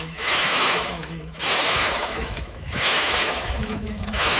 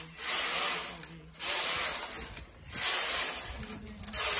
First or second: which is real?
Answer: second